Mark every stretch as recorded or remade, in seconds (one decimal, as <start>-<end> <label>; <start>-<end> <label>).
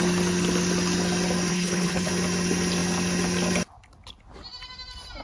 0.0-1.5 recorded; 1.5-2.1 remade; 2.1-5.2 recorded